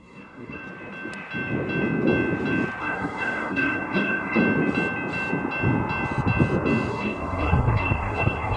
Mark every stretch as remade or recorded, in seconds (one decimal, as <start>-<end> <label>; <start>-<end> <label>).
0.0-0.6 remade; 0.6-2.8 recorded; 2.8-4.4 remade; 4.4-6.9 recorded; 6.9-8.6 remade